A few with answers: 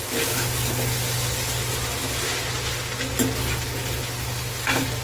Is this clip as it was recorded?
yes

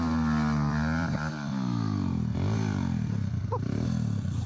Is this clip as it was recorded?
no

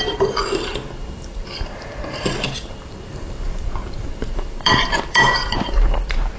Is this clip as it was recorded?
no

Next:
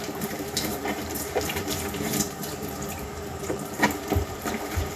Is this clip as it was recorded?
no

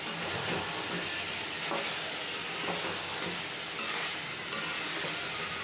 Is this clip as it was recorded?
yes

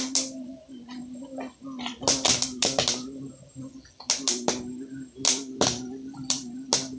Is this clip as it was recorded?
yes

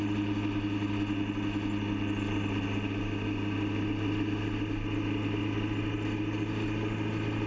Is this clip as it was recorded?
yes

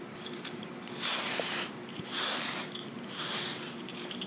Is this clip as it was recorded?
no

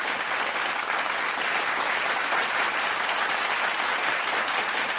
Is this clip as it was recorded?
yes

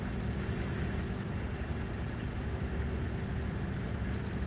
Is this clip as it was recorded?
yes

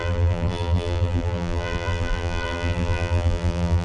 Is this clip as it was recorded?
no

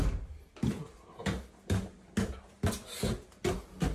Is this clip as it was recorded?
yes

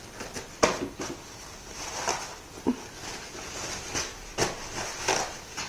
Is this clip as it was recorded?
yes